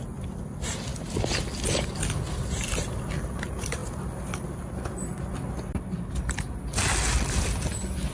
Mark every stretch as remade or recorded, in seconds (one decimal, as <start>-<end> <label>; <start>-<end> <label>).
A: 0.0-8.1 recorded